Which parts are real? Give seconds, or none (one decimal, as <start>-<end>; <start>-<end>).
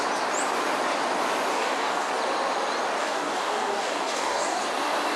0.0-1.5; 2.1-3.0; 4.6-5.2